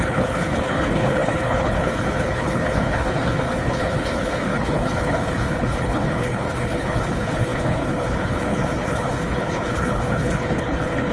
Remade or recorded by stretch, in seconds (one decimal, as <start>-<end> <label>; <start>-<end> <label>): 0.0-11.1 remade